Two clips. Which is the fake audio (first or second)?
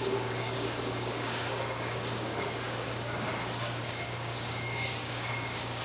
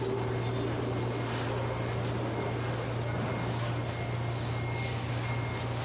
first